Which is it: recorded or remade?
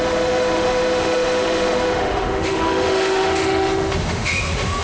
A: remade